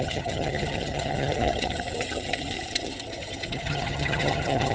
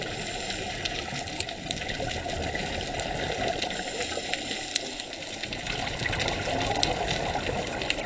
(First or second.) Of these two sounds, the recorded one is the second